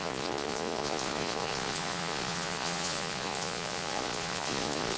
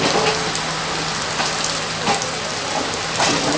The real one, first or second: second